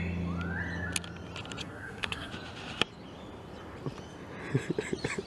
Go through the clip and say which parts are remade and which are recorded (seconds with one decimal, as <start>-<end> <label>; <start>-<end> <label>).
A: 0.0-1.6 recorded; 1.6-2.3 remade; 2.3-5.3 recorded